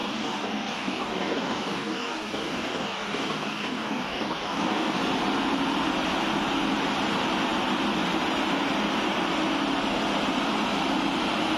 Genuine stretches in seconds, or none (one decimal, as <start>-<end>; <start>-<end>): 5.0-11.6